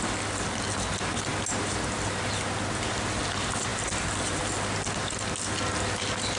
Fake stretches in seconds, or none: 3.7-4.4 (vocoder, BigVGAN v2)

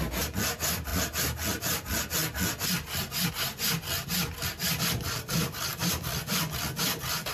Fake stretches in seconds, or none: none

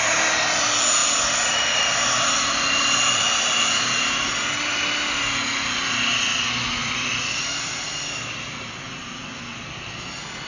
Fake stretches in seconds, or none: 1.0-2.6 (vocoder, BigVGAN v2); 6.8-9.9

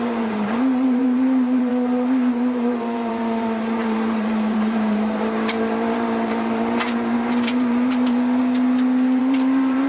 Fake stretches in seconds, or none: 0.0-8.4 (vocoder, BigVGAN v2); 9.2-9.9

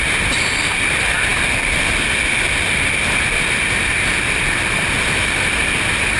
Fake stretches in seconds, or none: none

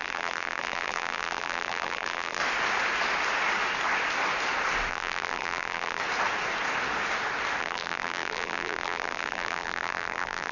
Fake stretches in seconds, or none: 0.0-2.4 (vocoder, BigVGAN v2); 4.9-6.0; 7.6-10.5